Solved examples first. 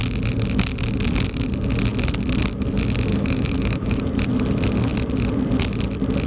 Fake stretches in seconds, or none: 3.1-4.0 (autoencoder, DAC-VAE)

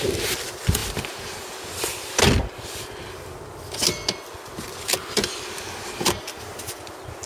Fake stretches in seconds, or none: none

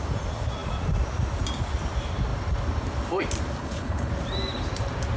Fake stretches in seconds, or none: 3.6-4.1 (codec, HILCodec)

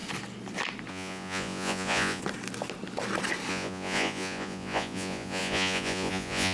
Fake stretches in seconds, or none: 0.9-2.2 (vocoder, Vocos); 3.5-6.5

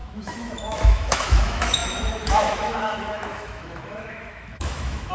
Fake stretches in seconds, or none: 0.0-5.1 (autoencoder, DAC-VAE)

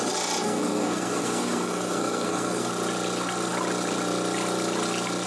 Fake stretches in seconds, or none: 0.4-2.7 (codec, SNAC)

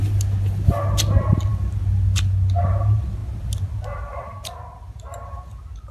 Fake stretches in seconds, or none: none